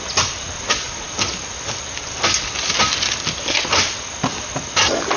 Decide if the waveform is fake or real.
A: real